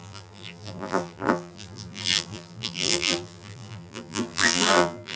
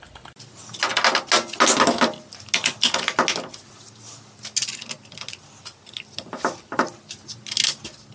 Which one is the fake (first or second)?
first